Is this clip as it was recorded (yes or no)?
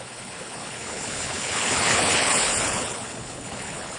no